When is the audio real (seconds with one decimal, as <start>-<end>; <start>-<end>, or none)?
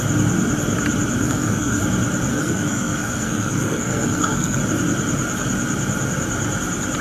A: 0.0-1.2; 1.8-2.3; 4.6-7.0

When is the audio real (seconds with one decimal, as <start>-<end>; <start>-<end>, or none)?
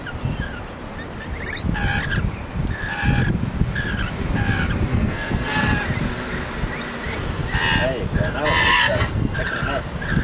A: 0.0-4.9; 5.6-8.6; 9.4-10.2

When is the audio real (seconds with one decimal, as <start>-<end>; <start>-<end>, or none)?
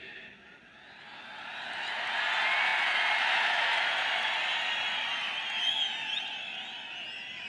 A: 0.0-7.5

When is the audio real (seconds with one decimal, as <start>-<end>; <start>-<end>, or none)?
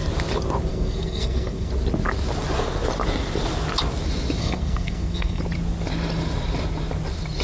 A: 0.0-0.7; 1.7-4.4; 5.4-7.4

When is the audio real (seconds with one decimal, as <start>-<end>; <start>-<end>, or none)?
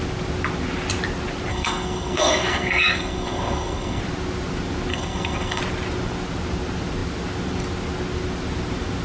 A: 0.0-1.5; 4.0-4.9; 5.6-9.0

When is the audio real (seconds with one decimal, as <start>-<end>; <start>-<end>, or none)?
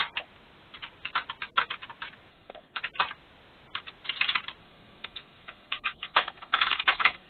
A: 0.0-2.3; 2.8-4.6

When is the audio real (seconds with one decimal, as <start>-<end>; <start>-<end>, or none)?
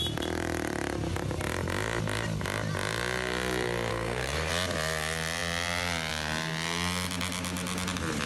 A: 0.0-3.9; 4.5-8.3